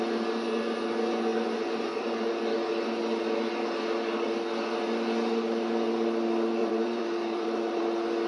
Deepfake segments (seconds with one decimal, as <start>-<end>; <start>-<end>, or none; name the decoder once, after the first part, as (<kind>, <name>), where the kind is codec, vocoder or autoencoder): 6.6-7.8 (vocoder, BigVGAN v2)